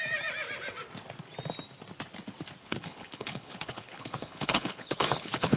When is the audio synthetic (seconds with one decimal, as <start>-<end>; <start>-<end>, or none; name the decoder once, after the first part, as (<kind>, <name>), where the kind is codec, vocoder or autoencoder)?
2.6-5.6 (codec, HILCodec)